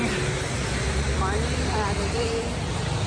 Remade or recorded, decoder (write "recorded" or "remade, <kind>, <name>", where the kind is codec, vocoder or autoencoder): recorded